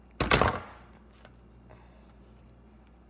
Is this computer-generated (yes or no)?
no